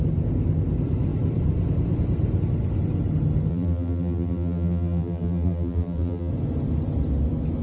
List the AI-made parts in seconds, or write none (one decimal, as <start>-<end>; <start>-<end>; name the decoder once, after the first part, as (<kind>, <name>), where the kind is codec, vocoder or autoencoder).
3.5-6.3 (vocoder, BigVGAN v2)